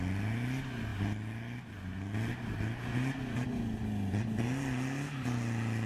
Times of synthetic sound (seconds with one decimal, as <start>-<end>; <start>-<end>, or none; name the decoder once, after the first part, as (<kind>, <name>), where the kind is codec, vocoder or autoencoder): none